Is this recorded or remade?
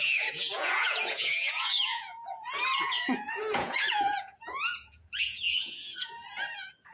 remade